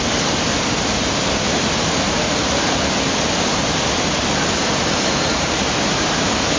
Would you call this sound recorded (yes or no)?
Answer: yes